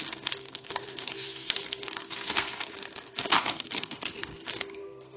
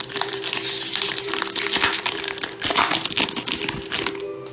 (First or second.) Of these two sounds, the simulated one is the first